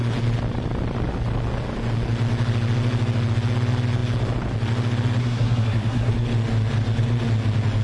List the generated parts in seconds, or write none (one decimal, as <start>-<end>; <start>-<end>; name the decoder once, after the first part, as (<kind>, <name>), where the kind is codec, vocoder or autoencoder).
5.2-6.1 (codec, SNAC)